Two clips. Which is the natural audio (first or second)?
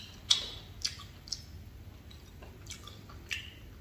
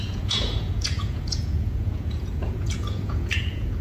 first